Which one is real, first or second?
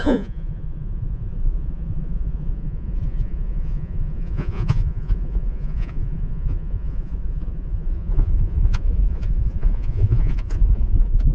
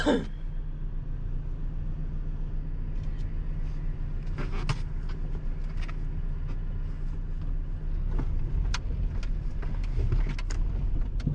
second